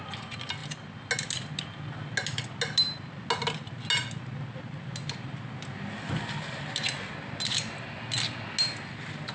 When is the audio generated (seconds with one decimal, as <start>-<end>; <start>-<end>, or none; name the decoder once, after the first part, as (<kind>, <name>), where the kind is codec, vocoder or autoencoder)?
none